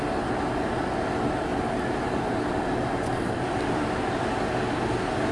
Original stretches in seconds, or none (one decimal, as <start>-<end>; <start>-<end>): 0.0-1.5; 4.1-5.3